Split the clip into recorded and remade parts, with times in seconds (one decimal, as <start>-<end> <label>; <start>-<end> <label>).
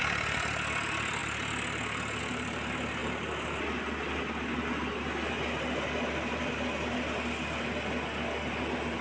0.0-9.0 recorded